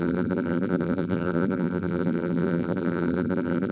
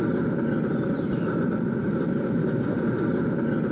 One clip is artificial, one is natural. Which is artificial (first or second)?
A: first